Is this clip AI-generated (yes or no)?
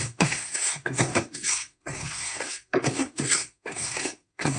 yes